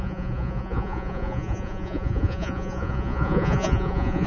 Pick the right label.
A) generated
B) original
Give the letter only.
A